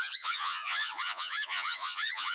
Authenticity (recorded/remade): remade